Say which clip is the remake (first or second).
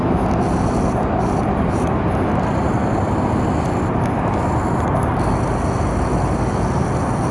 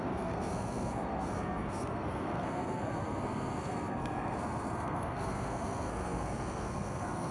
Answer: second